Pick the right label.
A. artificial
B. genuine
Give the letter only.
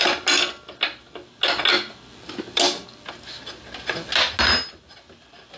B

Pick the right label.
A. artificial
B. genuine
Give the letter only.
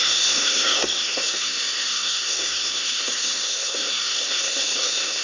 A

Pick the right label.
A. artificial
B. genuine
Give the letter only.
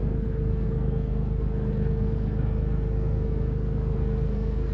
A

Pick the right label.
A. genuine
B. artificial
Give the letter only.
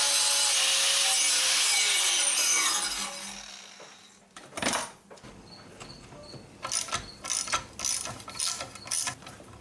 A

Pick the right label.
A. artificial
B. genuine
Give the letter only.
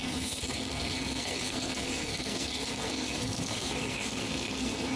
A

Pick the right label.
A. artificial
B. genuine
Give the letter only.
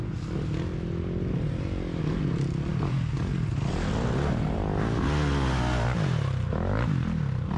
B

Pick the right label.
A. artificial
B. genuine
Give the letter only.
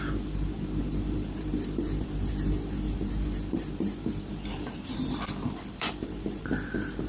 A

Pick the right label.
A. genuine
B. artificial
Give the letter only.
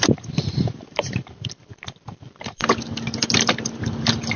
B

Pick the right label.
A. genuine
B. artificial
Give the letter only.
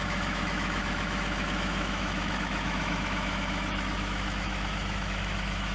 B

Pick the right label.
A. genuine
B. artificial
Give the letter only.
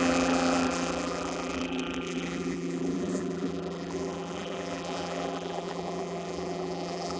B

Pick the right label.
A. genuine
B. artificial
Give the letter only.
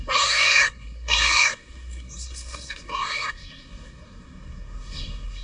B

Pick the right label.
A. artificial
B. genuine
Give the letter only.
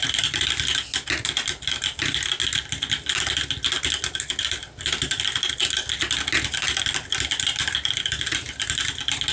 B